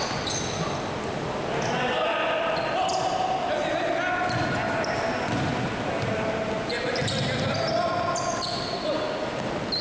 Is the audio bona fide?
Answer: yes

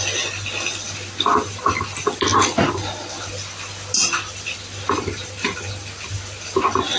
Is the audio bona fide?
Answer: yes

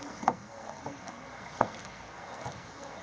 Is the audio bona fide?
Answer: no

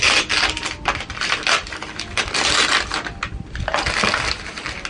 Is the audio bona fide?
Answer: yes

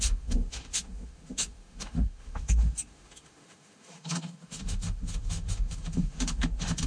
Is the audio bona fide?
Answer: no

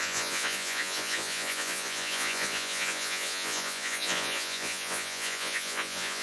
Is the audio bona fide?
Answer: no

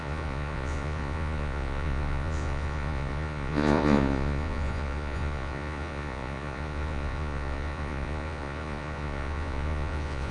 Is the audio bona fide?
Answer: no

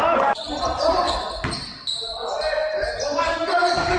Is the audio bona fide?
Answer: yes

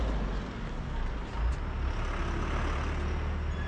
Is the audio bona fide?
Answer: yes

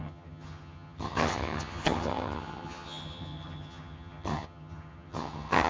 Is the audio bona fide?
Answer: no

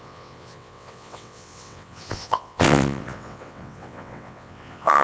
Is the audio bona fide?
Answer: no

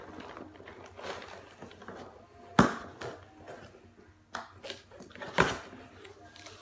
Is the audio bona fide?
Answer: yes